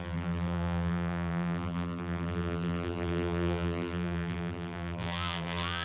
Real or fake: fake